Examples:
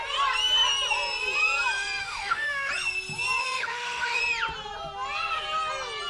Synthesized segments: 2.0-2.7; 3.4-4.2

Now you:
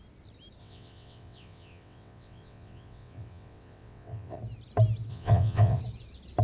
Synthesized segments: 0.6-4.4; 5.1-5.8

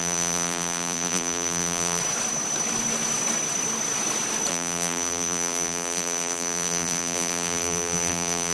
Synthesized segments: 0.0-2.0; 4.5-8.5